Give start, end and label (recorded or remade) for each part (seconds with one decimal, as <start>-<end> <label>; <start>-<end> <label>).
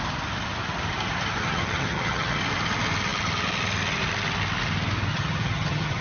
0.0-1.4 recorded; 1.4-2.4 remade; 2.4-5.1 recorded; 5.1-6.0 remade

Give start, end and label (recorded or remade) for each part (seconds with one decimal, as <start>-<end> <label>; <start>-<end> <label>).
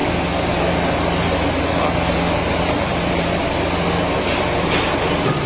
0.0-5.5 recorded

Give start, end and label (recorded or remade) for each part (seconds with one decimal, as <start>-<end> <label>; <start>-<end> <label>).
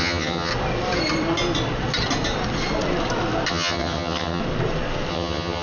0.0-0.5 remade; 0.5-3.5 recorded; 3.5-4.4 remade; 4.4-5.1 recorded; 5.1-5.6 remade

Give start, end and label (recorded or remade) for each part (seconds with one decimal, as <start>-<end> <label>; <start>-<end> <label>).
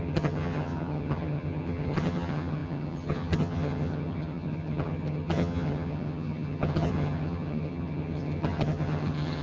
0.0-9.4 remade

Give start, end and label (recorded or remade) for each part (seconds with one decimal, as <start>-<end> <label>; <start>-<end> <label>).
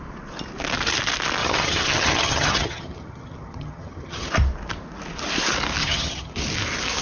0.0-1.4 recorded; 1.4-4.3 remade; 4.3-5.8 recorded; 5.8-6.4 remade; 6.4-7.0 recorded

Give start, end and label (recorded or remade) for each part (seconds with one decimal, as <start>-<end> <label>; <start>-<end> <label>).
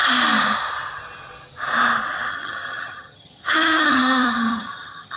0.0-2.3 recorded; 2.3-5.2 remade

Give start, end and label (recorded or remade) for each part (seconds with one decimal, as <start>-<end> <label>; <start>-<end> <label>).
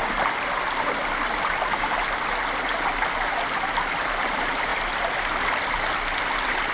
0.0-6.7 recorded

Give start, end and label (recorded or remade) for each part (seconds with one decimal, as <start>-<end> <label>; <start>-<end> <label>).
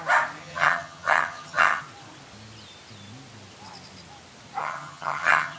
0.0-0.4 recorded; 0.4-1.8 remade; 1.8-4.6 recorded; 4.6-5.6 remade